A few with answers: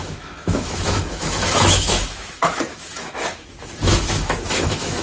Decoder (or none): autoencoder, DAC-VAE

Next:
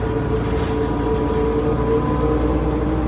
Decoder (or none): none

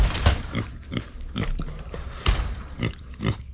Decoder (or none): vocoder, BigVGAN v2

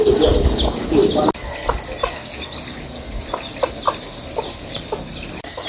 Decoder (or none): none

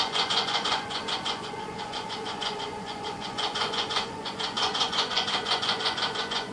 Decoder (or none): vocoder, Vocos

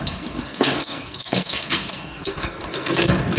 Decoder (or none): codec, SNAC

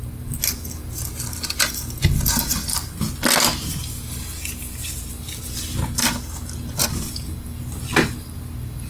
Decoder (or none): none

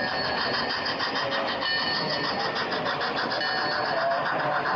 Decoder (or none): none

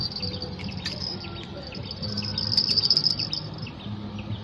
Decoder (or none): none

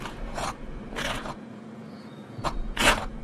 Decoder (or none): vocoder, Vocos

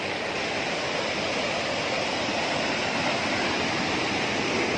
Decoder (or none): none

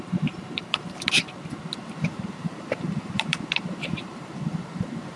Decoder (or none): vocoder, BigVGAN v2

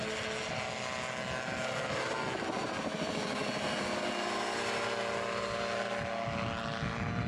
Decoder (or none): none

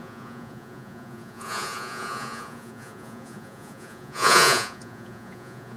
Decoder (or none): vocoder, Vocos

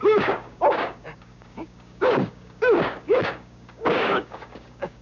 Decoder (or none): codec, DAC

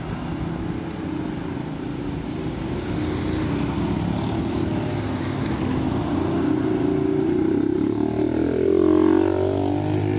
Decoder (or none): none